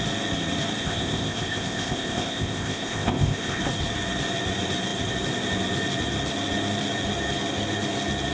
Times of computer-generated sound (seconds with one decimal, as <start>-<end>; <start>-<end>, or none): 0.8-3.6